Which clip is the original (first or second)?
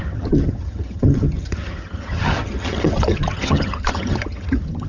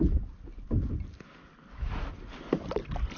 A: second